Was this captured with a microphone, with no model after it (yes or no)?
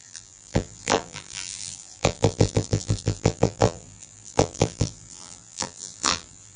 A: no